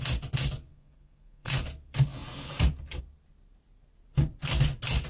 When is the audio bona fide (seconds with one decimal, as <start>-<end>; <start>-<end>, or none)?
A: 0.0-0.7; 1.6-5.1

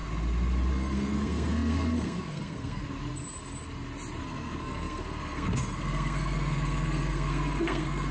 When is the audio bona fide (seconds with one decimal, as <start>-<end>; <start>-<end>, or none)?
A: 0.0-0.7; 2.8-4.2

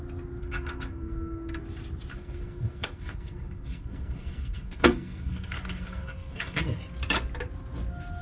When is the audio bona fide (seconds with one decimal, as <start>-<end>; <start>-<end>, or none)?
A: 0.0-0.4; 1.6-2.1; 6.8-8.2

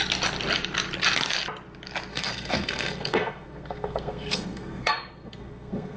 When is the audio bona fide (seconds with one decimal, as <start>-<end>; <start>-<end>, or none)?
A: 0.0-2.1

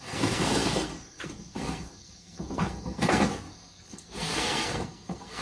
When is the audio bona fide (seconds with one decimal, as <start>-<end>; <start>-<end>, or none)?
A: none

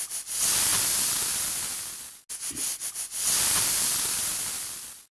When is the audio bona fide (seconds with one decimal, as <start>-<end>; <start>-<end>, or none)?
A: 0.0-5.2

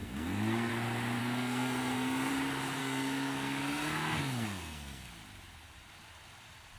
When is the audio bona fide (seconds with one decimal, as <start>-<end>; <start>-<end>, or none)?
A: 0.7-1.2; 2.3-2.8; 5.1-6.8